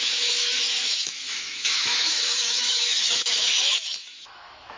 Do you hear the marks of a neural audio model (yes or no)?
yes